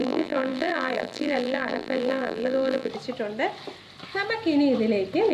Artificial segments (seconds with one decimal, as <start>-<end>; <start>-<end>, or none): 0.0-2.9